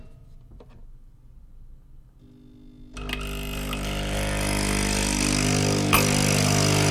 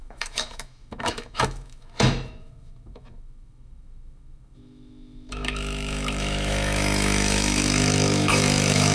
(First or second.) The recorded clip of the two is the first